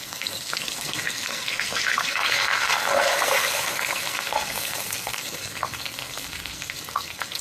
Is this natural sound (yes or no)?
no